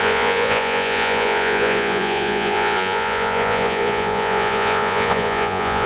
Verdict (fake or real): fake